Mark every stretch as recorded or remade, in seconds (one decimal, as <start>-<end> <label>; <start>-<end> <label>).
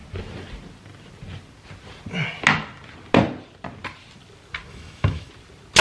0.0-4.7 recorded; 4.7-5.3 remade; 5.3-5.8 recorded